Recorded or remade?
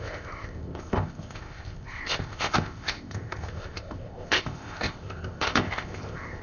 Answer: remade